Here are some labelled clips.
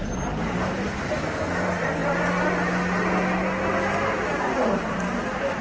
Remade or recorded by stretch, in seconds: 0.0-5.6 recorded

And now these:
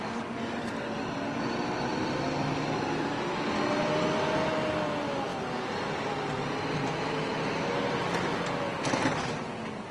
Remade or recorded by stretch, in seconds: 0.0-9.9 recorded

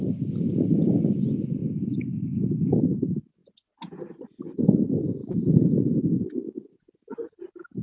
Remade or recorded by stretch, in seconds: 0.0-5.2 recorded; 5.2-6.0 remade; 6.0-7.8 recorded